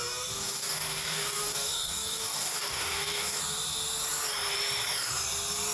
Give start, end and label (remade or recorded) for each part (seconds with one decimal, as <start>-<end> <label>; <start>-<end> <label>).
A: 0.0-3.4 remade; 3.4-5.7 recorded